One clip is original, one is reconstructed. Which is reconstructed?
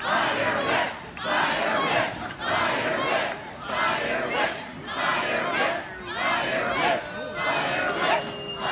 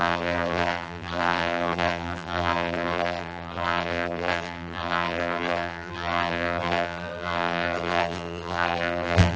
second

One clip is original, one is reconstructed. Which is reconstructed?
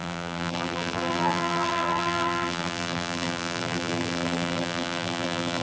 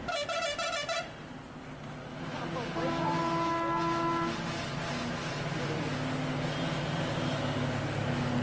first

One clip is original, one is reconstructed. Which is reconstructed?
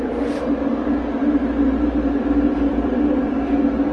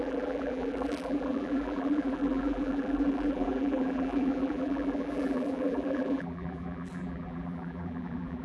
second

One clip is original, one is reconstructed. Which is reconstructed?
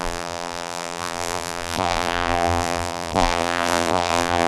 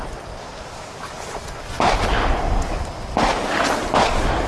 first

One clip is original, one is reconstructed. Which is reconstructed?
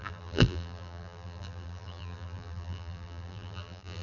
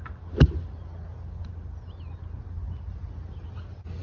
first